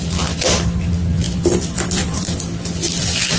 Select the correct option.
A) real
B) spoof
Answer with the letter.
A